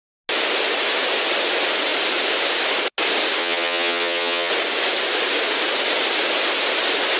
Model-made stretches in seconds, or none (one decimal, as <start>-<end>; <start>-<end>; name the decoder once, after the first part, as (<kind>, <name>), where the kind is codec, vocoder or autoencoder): 3.4-4.5 (vocoder, HiFi-GAN)